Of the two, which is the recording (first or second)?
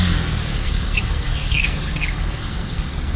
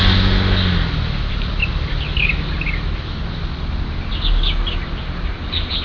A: second